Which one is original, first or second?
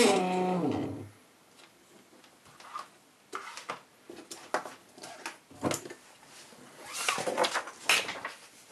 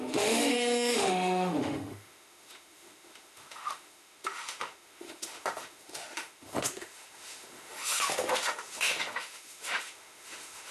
first